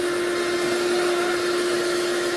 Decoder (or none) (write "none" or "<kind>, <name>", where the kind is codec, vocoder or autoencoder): none